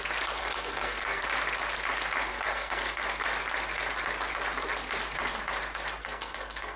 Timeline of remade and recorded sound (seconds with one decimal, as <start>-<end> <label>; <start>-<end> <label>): 0.0-0.4 recorded; 0.4-1.2 remade; 1.2-2.3 recorded; 2.3-3.0 remade; 3.0-6.0 recorded; 6.0-6.8 remade